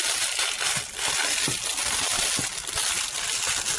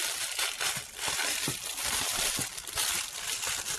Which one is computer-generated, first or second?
second